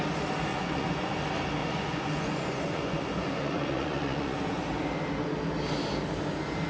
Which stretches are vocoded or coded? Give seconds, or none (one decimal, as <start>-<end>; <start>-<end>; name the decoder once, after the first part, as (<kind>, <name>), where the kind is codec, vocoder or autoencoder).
0.5-1.1 (vocoder, Vocos); 1.6-4.6